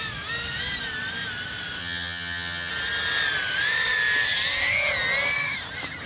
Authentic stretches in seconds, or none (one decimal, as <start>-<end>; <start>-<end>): 0.0-1.8; 2.7-6.1